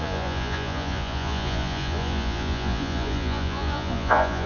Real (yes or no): no